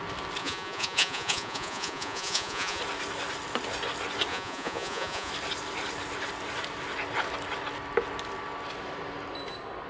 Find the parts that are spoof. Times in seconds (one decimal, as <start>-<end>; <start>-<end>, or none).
0.4-2.8; 4.3-5.3